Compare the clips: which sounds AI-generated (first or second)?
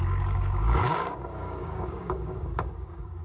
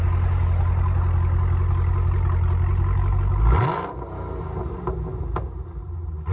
first